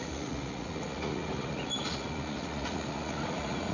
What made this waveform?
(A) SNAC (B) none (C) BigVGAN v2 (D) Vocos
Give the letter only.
D